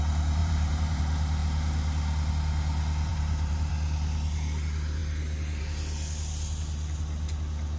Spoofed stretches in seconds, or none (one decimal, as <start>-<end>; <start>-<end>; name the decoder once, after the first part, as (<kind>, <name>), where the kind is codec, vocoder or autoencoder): 0.4-1.0 (vocoder, BigVGAN v2); 3.1-3.7